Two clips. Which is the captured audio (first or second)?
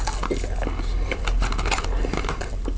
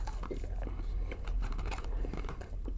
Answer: first